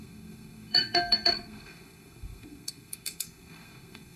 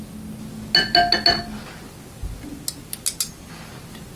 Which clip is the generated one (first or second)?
first